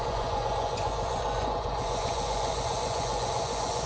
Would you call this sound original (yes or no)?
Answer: no